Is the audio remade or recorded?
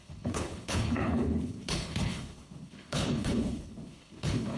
remade